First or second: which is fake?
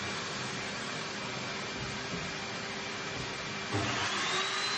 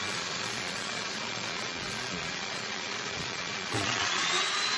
second